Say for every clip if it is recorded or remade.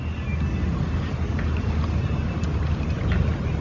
recorded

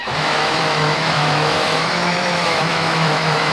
remade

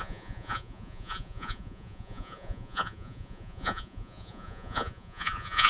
remade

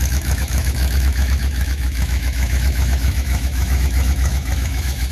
remade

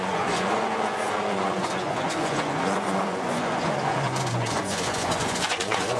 remade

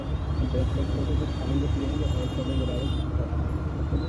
remade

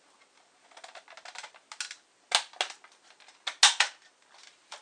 recorded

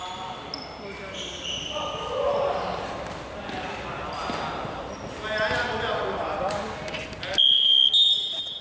recorded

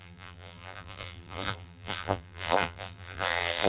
remade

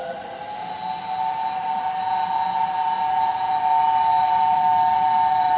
recorded